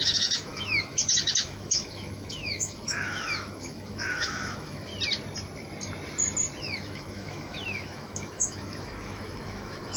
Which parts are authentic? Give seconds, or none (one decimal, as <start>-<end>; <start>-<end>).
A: 4.9-6.6